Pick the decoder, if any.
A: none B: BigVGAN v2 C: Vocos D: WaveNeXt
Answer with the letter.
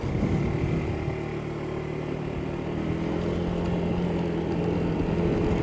A